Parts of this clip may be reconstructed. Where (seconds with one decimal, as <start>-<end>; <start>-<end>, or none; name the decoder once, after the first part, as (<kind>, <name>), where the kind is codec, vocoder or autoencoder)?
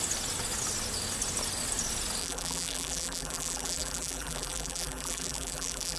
2.2-6.0 (vocoder, BigVGAN v2)